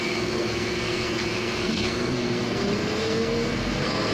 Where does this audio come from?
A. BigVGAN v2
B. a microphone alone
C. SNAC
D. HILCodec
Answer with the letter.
C